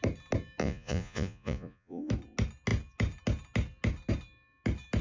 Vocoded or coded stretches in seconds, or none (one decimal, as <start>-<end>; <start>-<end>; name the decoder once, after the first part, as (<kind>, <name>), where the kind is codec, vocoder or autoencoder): 0.6-2.1 (vocoder, Vocos)